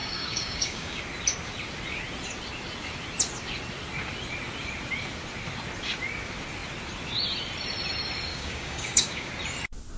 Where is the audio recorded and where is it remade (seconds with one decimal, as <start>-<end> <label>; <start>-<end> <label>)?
0.0-1.0 remade; 1.0-8.3 recorded; 8.3-9.3 remade; 9.3-10.0 recorded